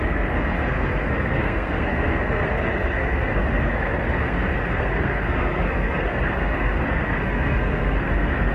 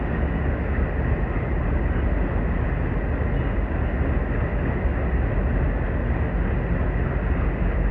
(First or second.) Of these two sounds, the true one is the second